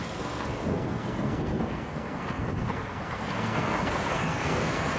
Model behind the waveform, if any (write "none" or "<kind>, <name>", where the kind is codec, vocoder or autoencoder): codec, SNAC